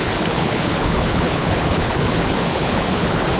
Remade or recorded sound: remade